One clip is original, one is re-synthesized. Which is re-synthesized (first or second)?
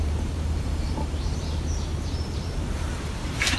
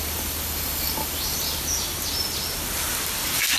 first